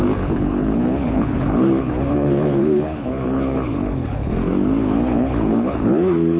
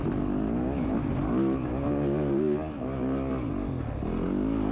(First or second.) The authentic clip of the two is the second